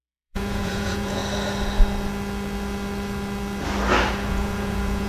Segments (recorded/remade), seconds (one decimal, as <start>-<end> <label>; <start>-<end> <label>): 0.0-1.2 remade; 1.2-4.3 recorded; 4.3-5.1 remade